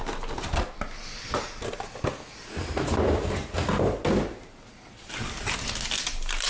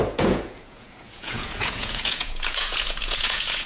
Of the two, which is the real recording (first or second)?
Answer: first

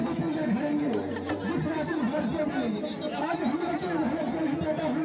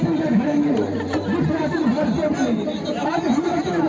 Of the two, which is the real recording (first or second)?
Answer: first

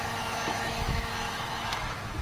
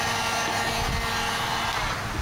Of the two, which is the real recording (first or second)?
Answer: second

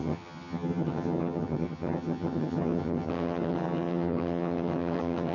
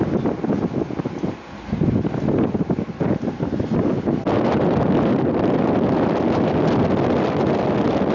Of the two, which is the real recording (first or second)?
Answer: second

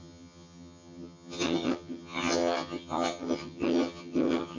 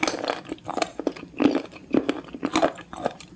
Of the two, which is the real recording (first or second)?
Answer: second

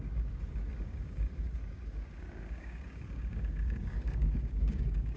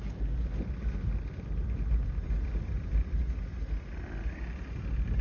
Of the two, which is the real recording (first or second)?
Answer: second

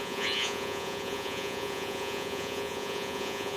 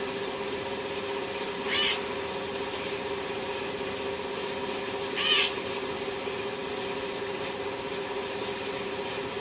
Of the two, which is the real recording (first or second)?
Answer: second